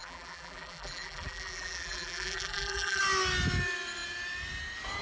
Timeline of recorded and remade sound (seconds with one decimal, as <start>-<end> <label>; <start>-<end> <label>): 0.0-3.0 remade; 3.0-5.0 recorded